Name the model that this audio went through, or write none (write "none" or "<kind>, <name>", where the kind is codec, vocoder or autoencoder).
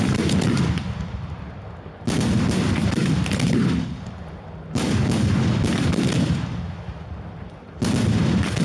none